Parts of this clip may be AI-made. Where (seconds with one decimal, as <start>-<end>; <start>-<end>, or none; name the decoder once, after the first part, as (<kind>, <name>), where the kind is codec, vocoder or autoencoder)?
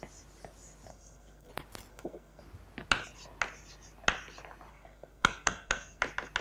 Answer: 0.9-1.5 (codec, SNAC); 1.9-2.4; 4.7-6.0